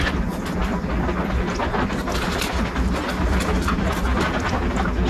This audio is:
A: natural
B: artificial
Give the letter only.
A